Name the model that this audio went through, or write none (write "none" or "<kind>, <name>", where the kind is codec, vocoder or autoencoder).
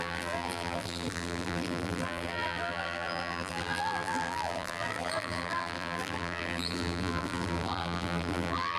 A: vocoder, BigVGAN v2